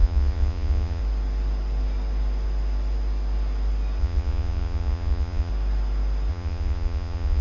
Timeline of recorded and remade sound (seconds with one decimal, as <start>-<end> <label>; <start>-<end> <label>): 0.0-1.0 remade; 1.0-4.0 recorded; 4.0-5.5 remade; 5.5-6.3 recorded; 6.3-7.4 remade